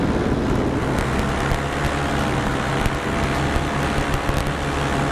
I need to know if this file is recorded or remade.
recorded